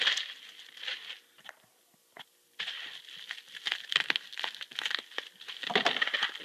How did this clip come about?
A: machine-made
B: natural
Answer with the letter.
B